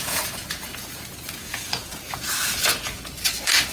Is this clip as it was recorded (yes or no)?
no